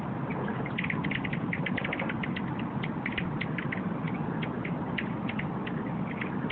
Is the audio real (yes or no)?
yes